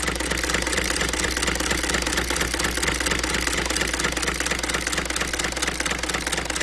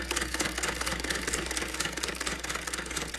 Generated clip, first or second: second